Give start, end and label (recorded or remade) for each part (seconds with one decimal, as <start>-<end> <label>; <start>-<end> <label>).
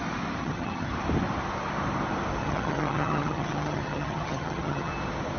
0.0-0.4 recorded; 0.4-0.9 remade; 0.9-2.4 recorded; 2.4-4.9 remade; 4.9-5.4 recorded